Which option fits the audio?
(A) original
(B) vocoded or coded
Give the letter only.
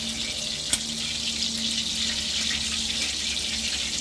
A